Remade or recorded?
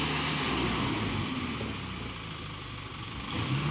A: recorded